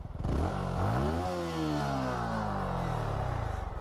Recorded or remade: recorded